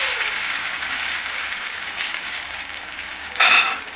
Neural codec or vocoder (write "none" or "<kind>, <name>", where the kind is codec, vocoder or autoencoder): codec, DAC